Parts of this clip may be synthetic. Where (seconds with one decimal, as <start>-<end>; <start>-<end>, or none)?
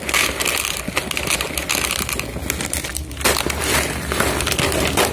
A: none